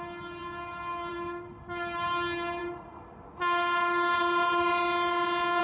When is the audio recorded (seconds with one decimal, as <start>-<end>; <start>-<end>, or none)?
0.0-5.6